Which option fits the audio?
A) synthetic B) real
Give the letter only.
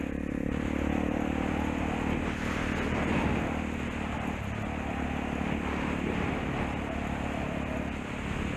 B